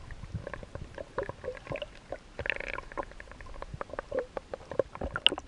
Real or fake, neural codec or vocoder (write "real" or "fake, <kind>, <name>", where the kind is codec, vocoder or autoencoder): real